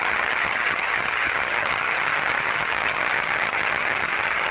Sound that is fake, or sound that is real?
fake